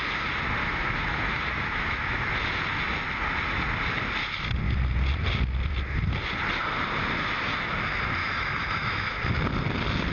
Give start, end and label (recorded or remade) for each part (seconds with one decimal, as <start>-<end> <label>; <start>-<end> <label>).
0.0-0.6 recorded; 0.6-2.3 remade; 2.3-8.2 recorded; 8.2-9.1 remade; 9.1-10.1 recorded

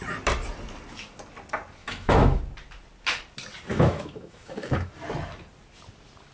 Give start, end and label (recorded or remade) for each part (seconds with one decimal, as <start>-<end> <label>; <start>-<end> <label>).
0.0-1.8 recorded; 1.8-2.4 remade; 2.4-3.7 recorded; 3.7-4.9 remade; 4.9-6.3 recorded

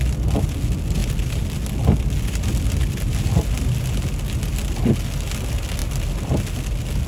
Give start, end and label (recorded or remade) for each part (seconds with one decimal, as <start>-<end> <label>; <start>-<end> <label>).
0.0-7.1 recorded

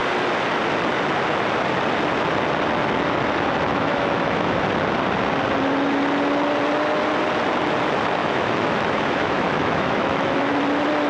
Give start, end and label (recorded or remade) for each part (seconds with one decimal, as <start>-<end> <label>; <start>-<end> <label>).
0.0-3.7 recorded; 3.7-4.6 remade; 4.6-8.2 recorded; 8.2-10.6 remade; 10.6-11.1 recorded

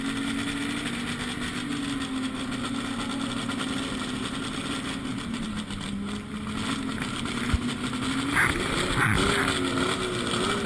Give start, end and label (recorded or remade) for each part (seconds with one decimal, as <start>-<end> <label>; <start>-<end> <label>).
0.0-10.7 recorded

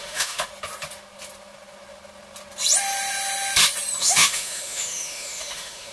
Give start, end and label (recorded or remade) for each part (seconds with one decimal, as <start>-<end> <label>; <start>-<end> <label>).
0.0-0.5 remade; 0.5-4.0 recorded; 4.0-5.9 remade

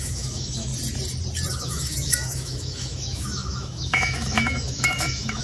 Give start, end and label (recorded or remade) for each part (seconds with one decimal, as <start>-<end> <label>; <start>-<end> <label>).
0.0-0.7 remade; 0.7-1.5 recorded; 1.5-5.4 remade